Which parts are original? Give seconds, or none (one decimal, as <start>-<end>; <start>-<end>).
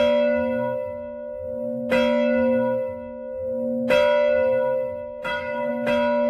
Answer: 0.0-5.2; 5.7-6.3